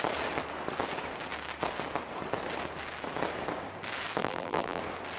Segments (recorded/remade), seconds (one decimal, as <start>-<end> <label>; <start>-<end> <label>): 0.0-4.2 recorded; 4.2-4.8 remade; 4.8-5.2 recorded

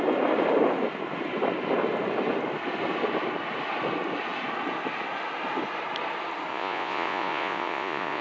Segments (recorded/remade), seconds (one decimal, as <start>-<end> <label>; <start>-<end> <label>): 0.0-6.5 recorded; 6.5-8.2 remade

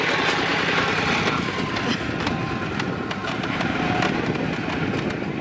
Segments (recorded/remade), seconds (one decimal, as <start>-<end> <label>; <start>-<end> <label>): 0.0-3.2 recorded; 3.2-4.4 remade; 4.4-5.4 recorded

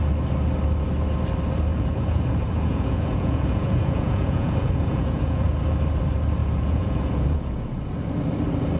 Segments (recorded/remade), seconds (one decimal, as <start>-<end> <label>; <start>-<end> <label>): 0.0-1.7 recorded; 1.7-5.6 remade; 5.6-6.4 recorded; 6.4-7.8 remade; 7.8-8.8 recorded

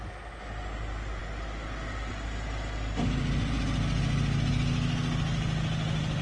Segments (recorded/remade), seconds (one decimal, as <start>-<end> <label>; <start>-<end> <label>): 0.0-6.2 recorded